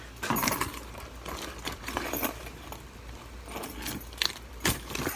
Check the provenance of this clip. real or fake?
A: real